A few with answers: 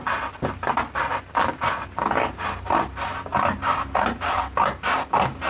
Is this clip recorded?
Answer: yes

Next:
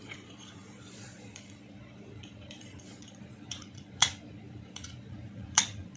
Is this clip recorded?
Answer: no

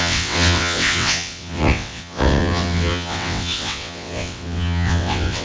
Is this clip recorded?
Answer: no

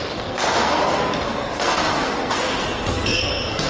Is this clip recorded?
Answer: no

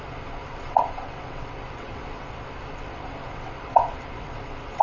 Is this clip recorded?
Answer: no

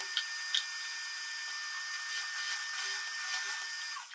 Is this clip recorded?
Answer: yes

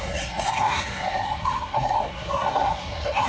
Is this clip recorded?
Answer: no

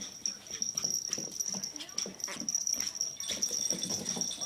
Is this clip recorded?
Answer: yes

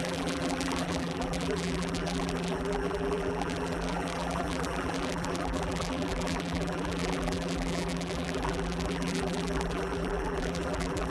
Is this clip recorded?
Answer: no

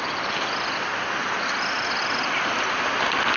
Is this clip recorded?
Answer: yes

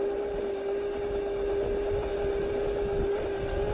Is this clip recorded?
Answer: yes